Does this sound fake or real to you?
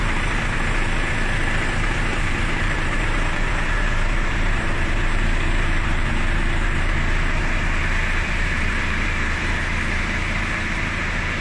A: fake